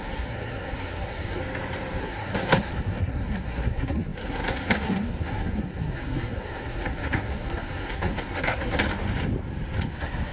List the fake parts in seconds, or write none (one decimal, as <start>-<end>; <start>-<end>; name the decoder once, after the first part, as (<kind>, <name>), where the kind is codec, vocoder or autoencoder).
0.0-1.4 (codec, SNAC); 2.0-8.8; 9.9-10.3